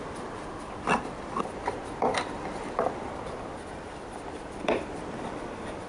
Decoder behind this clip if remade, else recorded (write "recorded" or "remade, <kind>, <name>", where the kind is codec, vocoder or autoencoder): recorded